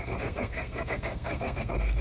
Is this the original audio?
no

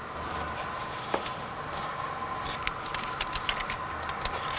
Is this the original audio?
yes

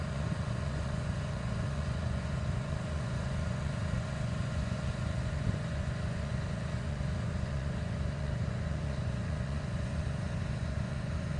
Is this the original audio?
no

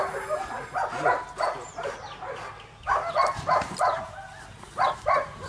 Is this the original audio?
yes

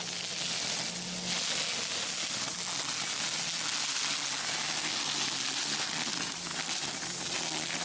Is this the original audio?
yes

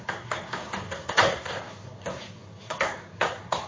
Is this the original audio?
no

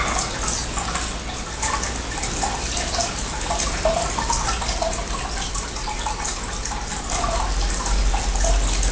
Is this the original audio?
yes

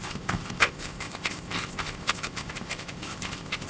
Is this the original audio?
no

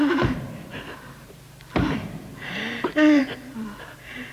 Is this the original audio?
no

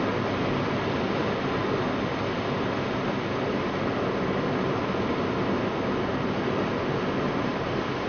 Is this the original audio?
yes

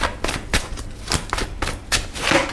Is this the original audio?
yes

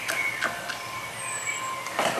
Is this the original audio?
yes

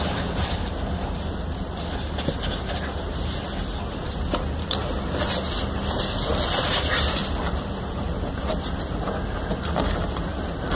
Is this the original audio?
no